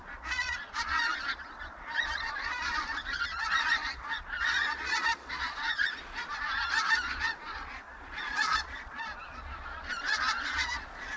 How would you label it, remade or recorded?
remade